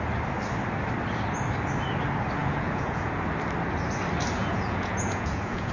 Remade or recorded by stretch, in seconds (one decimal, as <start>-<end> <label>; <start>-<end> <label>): 0.0-2.4 recorded; 2.4-3.1 remade; 3.1-4.4 recorded; 4.4-5.7 remade